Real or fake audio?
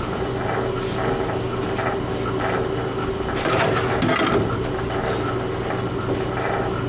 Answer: real